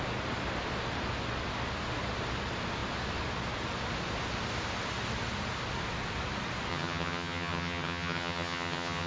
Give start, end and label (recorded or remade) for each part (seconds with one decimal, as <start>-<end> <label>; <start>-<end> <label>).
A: 0.0-6.7 recorded; 6.7-9.1 remade